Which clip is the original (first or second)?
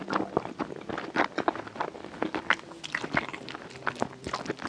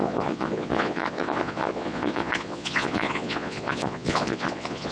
first